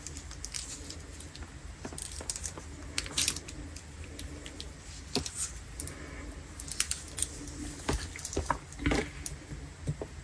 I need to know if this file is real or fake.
real